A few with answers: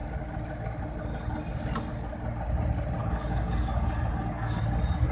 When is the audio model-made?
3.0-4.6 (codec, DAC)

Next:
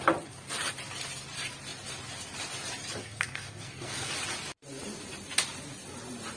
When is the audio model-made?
3.0-4.1 (codec, SNAC)

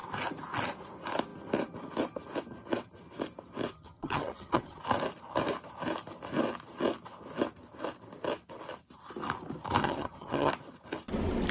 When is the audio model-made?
3.7-4.8 (vocoder, HiFi-GAN); 9.8-10.5

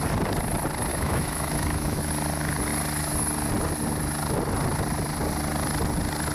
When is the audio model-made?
0.9-2.1 (autoencoder, DAC-VAE)

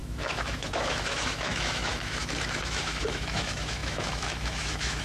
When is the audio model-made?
0.0-5.0 (autoencoder, DAC-VAE)

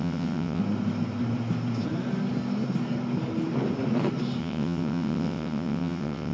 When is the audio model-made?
0.0-0.6 (vocoder, WaveNeXt); 4.4-6.3

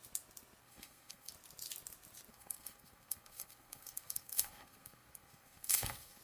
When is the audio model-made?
0.6-1.3 (codec, SNAC); 2.3-6.2